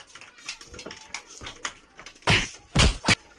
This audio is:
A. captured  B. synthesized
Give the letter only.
A